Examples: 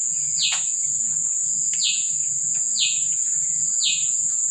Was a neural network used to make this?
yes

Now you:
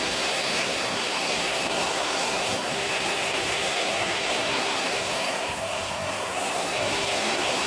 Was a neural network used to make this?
yes